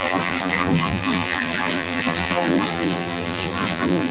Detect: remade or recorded remade